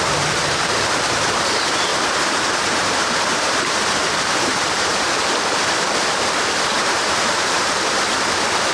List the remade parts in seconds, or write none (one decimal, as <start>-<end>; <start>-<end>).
1.9-5.1; 6.7-8.0